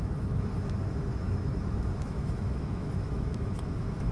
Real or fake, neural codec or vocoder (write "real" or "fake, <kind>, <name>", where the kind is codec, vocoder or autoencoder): fake, autoencoder, DAC-VAE